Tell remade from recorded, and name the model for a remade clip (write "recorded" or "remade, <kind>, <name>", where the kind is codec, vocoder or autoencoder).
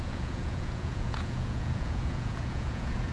remade, vocoder, Vocos